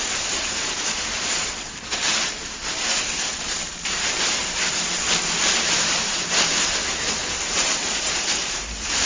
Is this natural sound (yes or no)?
no